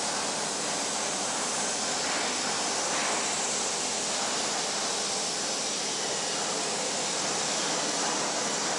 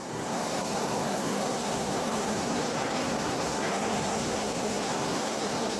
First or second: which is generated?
second